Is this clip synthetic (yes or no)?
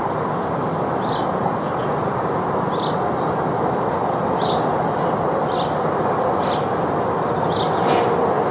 no